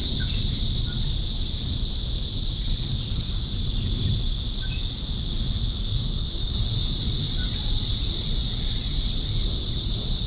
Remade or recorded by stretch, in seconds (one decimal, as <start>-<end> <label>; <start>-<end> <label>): 0.0-0.6 remade; 0.6-10.3 recorded